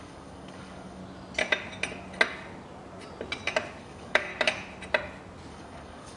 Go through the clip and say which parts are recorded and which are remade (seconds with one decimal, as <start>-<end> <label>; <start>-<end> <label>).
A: 0.0-1.0 remade; 1.0-3.8 recorded; 3.8-4.3 remade; 4.3-5.5 recorded; 5.5-6.2 remade